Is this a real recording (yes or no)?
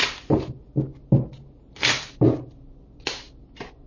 yes